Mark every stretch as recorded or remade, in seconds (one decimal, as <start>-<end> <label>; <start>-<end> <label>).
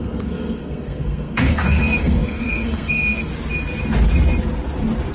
0.0-3.3 remade; 3.3-5.1 recorded